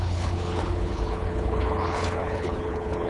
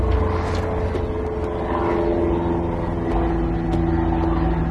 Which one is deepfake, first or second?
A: first